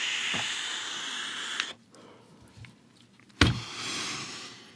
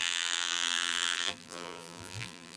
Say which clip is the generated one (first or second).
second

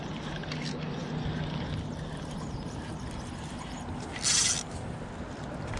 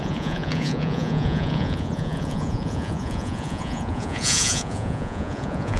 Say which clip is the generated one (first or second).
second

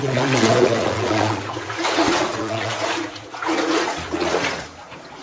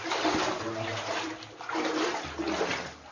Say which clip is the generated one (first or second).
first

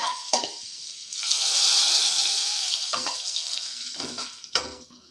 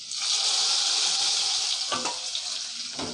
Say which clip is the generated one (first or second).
first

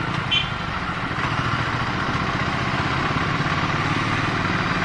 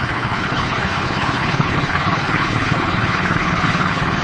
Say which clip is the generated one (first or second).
second